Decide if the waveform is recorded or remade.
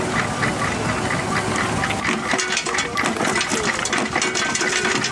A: recorded